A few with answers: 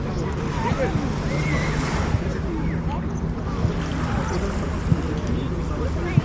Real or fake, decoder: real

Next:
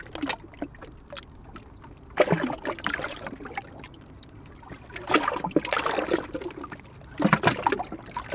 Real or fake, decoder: real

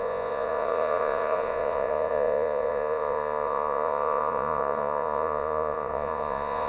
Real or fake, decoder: fake, vocoder, Vocos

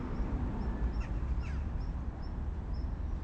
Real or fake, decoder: real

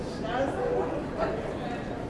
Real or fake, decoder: real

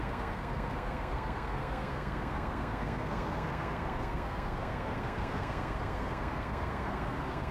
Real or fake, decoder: fake, codec, SNAC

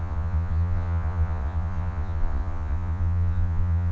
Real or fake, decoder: fake, vocoder, Vocos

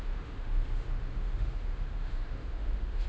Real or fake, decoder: fake, autoencoder, DAC-VAE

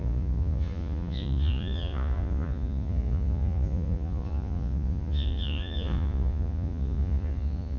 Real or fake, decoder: fake, vocoder, Vocos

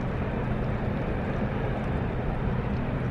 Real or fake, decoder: real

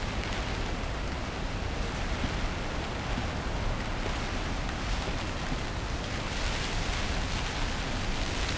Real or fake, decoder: real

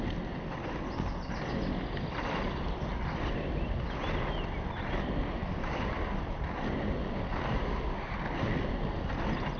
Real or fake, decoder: real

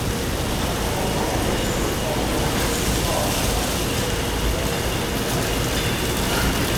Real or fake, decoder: real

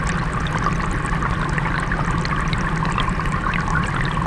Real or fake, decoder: real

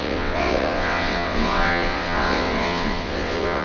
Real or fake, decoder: fake, vocoder, WaveNeXt